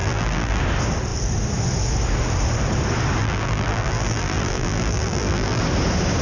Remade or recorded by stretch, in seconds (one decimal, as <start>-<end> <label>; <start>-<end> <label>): 0.0-0.6 remade; 0.6-3.2 recorded; 3.2-5.6 remade; 5.6-6.2 recorded